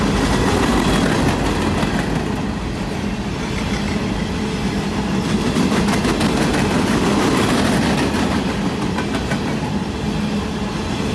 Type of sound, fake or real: real